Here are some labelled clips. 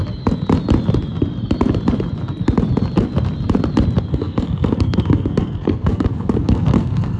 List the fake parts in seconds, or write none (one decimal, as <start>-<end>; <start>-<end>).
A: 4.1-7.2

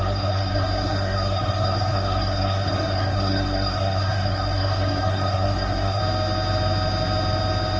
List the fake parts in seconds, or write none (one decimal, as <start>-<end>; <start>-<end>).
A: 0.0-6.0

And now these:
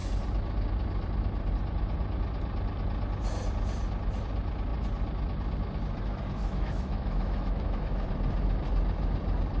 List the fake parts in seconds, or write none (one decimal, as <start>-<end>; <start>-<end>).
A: 6.4-8.1

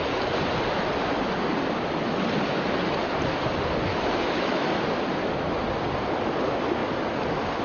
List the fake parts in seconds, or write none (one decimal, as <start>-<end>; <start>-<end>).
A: 3.9-4.8

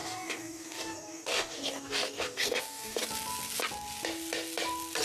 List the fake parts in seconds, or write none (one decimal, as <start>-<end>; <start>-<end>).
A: 0.0-3.0